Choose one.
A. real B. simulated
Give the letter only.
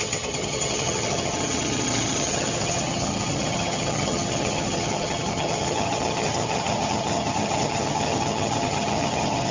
B